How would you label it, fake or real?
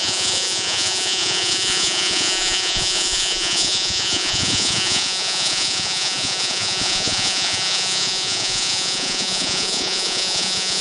fake